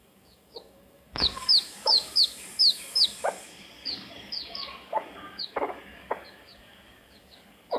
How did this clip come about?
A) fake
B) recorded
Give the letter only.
A